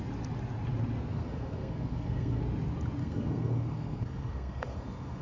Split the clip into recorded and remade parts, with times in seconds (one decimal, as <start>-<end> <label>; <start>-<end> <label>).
0.0-1.1 recorded; 1.1-2.4 remade; 2.4-3.0 recorded; 3.0-5.2 remade